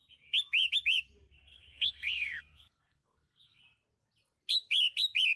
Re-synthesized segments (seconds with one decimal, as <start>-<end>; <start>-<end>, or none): 1.5-3.6